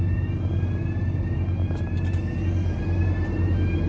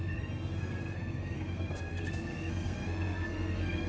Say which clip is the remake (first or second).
second